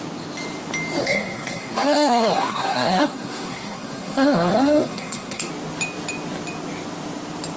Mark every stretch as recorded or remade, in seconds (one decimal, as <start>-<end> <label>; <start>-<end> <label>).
0.0-1.0 recorded; 1.0-5.5 remade; 5.5-7.6 recorded